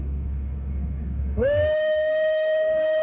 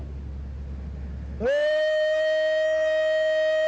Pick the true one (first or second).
second